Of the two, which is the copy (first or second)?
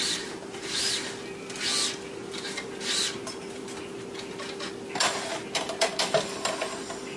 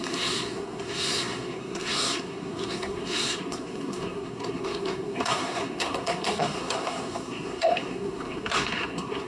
second